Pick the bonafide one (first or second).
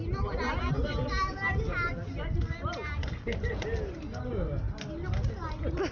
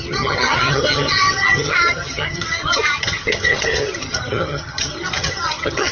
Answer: first